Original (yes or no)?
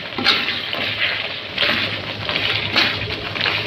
yes